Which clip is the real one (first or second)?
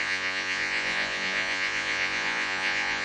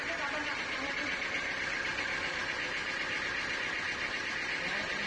second